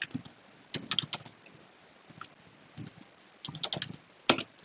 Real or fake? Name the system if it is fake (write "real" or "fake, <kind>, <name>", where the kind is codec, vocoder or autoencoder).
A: real